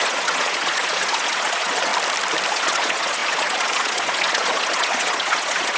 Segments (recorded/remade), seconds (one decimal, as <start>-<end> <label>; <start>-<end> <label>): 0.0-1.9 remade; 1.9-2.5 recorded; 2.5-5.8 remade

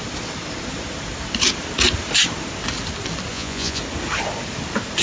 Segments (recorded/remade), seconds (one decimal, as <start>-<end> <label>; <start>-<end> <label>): 0.0-3.3 recorded; 3.3-3.8 remade; 3.8-5.0 recorded

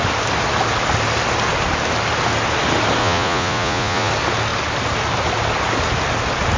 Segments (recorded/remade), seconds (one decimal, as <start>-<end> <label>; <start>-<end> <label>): 0.0-3.0 recorded; 3.0-4.1 remade; 4.1-6.6 recorded